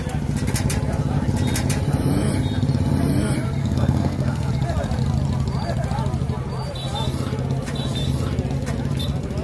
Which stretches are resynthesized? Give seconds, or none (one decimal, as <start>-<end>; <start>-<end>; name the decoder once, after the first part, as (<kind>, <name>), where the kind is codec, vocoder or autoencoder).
3.6-4.5 (codec, SNAC)